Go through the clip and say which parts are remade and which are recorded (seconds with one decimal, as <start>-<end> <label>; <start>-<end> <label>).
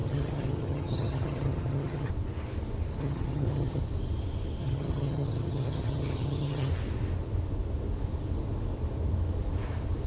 0.0-2.1 remade; 2.1-3.0 recorded; 3.0-3.8 remade; 3.8-4.6 recorded; 4.6-6.7 remade; 6.7-10.1 recorded